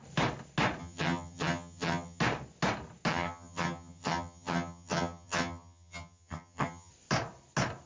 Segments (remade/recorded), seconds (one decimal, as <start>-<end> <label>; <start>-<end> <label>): 0.0-0.8 recorded; 0.8-2.2 remade; 2.2-3.1 recorded; 3.1-6.9 remade; 6.9-7.9 recorded